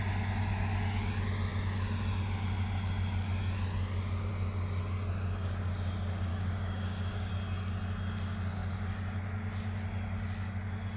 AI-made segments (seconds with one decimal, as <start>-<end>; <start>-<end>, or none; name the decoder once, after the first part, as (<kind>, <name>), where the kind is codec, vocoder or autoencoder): 6.3-7.3 (codec, DAC)